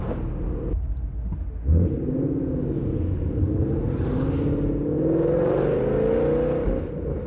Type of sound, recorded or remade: recorded